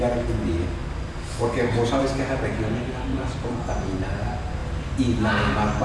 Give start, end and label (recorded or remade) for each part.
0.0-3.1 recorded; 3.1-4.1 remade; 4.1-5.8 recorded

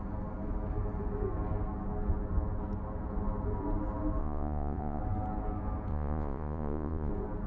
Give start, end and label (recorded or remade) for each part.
0.0-4.2 recorded; 4.2-5.0 remade; 5.0-5.9 recorded; 5.9-7.1 remade; 7.1-7.5 recorded

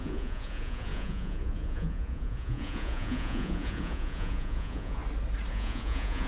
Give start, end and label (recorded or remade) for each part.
0.0-5.0 remade; 5.0-5.5 recorded; 5.5-6.3 remade

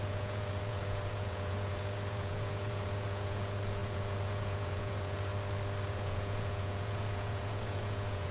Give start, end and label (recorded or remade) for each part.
0.0-5.3 remade; 5.3-5.8 recorded; 5.8-8.3 remade

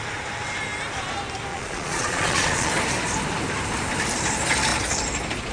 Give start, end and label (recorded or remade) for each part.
0.0-1.5 recorded; 1.5-2.7 remade; 2.7-5.5 recorded

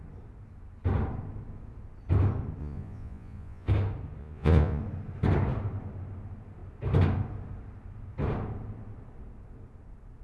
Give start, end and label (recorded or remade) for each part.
0.0-2.6 recorded; 2.6-3.7 remade; 3.7-4.2 recorded; 4.2-4.8 remade; 4.8-10.2 recorded

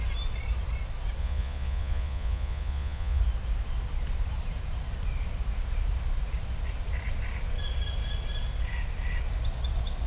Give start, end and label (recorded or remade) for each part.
0.0-1.2 recorded; 1.2-3.2 remade; 3.2-10.1 recorded

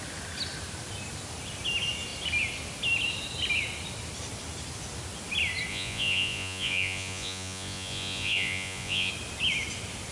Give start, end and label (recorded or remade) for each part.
0.0-5.7 recorded; 5.7-9.1 remade; 9.1-10.1 recorded